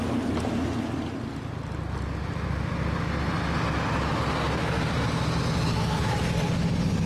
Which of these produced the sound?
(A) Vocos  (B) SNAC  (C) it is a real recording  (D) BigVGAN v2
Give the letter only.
C